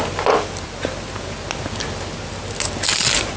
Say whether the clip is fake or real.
real